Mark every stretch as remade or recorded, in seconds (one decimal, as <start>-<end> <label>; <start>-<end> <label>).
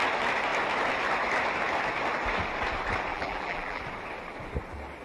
0.0-3.1 recorded; 3.1-3.8 remade; 3.8-5.0 recorded